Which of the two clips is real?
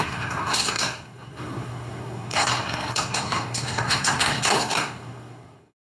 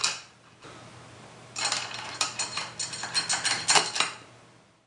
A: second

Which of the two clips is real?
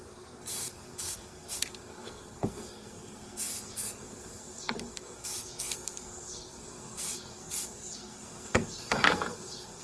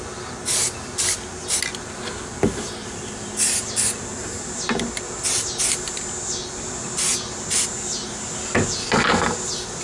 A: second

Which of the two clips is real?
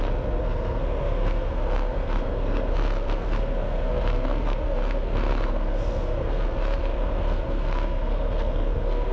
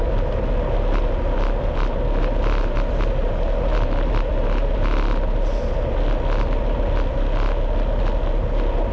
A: second